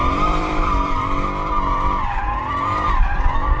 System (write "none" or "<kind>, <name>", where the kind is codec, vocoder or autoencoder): vocoder, BigVGAN v2